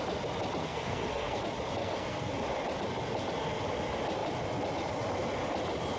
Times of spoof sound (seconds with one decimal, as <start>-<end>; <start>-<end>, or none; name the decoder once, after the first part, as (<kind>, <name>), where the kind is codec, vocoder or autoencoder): 0.6-1.4 (codec, SNAC); 1.8-2.3